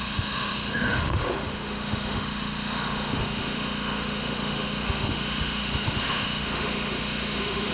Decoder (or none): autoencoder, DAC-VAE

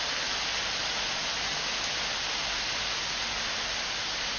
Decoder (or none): none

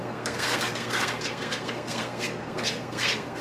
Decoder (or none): codec, SNAC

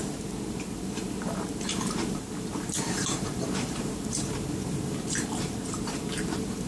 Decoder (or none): vocoder, BigVGAN v2